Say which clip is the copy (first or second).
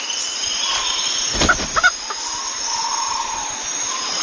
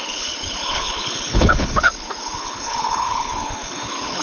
second